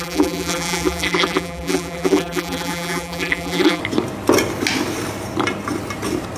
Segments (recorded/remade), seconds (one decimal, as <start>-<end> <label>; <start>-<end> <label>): 0.0-3.8 remade; 3.8-6.4 recorded